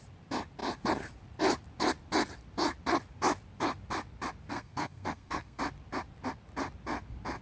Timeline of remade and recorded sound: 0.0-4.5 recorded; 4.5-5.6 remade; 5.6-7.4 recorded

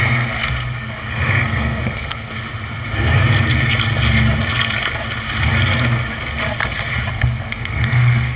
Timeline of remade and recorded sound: 0.0-0.4 remade; 0.4-1.1 recorded; 1.1-2.3 remade; 2.3-7.1 recorded; 7.1-8.4 remade

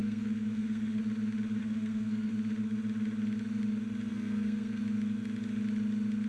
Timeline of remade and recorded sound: 0.0-1.0 remade; 1.0-1.6 recorded; 1.6-2.3 remade; 2.3-4.1 recorded; 4.1-4.8 remade; 4.8-6.3 recorded

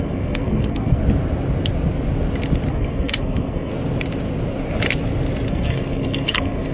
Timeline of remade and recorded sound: 0.0-1.0 remade; 1.0-2.7 recorded; 2.7-3.7 remade; 3.7-5.5 recorded; 5.5-6.7 remade

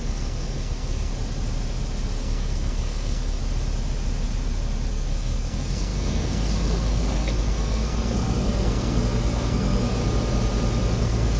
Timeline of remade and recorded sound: 0.0-1.1 remade; 1.1-2.2 recorded; 2.2-3.4 remade; 3.4-4.9 recorded; 4.9-10.0 remade; 10.0-10.9 recorded; 10.9-11.4 remade